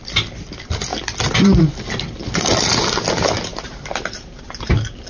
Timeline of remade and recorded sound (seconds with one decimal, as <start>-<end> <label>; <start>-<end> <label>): 0.0-5.1 recorded